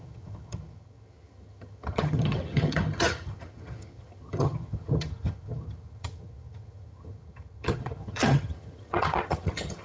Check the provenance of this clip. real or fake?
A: fake